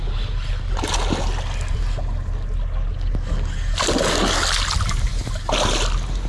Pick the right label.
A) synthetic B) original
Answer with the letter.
B